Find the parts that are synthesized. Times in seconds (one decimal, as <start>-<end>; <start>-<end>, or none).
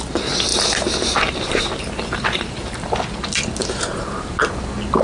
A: 0.5-3.0; 3.6-4.4